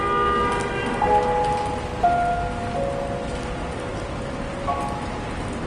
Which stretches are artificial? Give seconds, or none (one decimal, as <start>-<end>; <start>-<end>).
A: none